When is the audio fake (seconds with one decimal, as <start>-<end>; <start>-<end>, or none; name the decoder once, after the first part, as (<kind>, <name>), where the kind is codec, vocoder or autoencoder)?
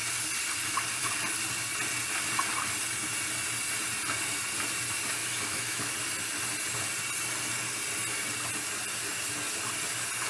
5.2-5.9 (autoencoder, DAC-VAE)